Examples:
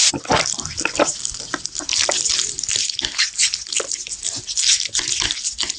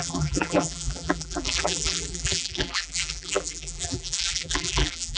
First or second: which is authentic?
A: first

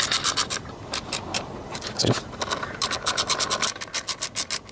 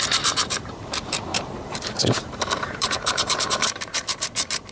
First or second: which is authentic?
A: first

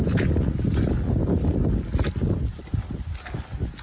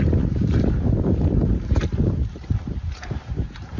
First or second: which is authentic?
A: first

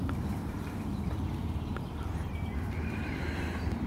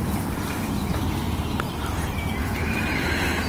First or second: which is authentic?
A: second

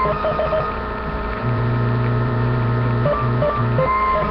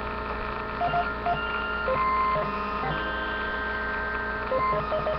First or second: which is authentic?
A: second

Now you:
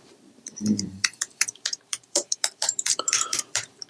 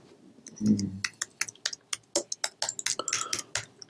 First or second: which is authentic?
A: second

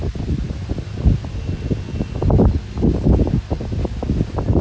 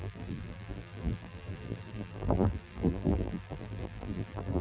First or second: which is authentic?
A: first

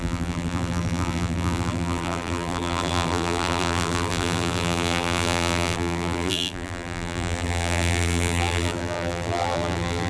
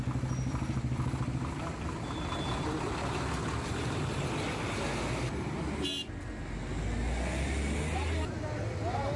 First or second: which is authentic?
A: second